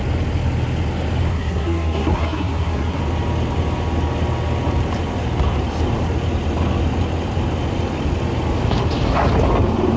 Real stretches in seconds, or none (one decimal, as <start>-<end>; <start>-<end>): 0.0-1.3; 3.0-10.0

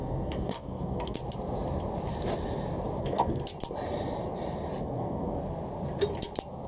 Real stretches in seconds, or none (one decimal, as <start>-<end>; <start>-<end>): 1.2-3.0; 3.4-4.8; 5.4-6.7

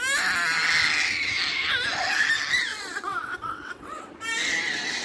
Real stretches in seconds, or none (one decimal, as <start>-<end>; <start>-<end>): 0.0-2.7; 4.1-5.0

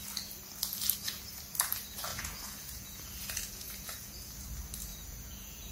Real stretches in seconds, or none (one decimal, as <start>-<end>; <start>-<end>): 0.0-2.1; 4.3-4.9

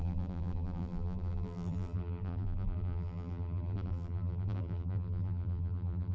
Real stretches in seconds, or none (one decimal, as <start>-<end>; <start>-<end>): none